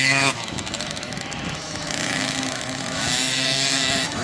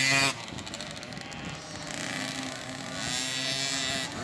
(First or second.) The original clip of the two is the second